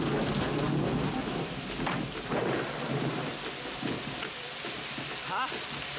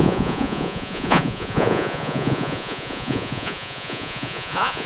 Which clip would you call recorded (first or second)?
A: first